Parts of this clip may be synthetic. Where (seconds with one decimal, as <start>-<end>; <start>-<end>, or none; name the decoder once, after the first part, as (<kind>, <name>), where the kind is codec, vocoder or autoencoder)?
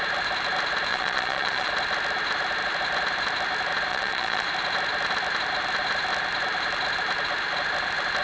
0.9-1.7 (vocoder, Vocos); 3.9-4.5